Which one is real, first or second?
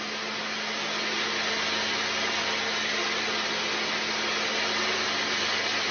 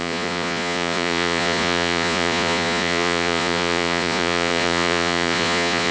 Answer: first